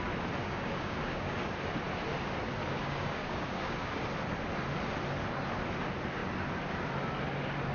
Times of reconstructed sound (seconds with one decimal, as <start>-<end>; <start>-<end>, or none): 0.4-1.5; 2.8-4.0